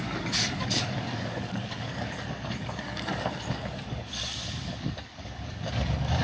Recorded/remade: remade